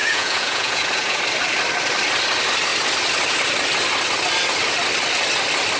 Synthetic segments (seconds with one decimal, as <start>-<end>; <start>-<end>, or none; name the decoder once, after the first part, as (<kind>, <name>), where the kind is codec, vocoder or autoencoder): 0.0-1.2 (vocoder, Vocos)